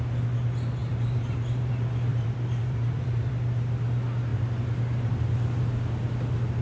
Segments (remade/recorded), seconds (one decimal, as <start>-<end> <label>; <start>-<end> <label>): 0.0-0.8 recorded; 0.8-1.7 remade; 1.7-2.1 recorded; 2.1-3.3 remade; 3.3-6.6 recorded